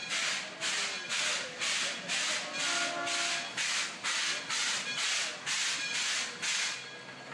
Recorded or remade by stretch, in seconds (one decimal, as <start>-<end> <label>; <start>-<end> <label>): 0.0-7.3 recorded